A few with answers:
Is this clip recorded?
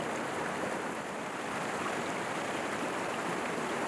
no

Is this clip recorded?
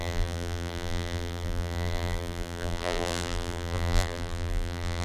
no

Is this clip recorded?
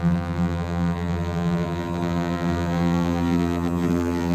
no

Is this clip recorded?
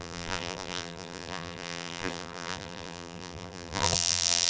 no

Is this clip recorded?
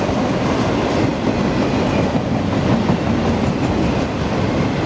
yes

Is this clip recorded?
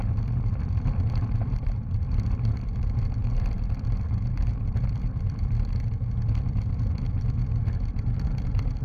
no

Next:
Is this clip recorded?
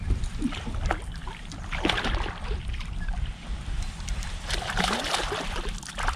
no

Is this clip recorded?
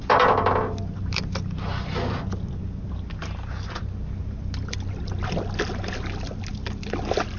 yes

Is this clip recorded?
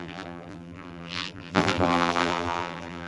no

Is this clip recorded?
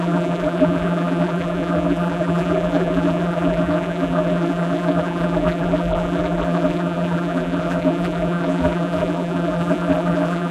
no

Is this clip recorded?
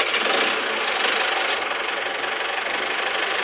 yes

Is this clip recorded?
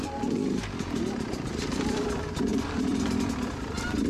no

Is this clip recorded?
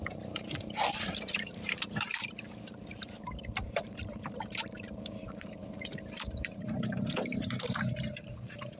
no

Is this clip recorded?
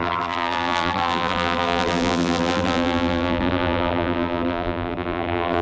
no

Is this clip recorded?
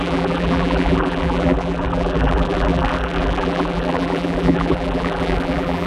no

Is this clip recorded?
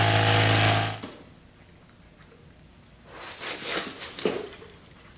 yes